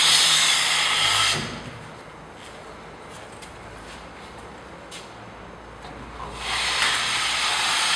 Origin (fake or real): real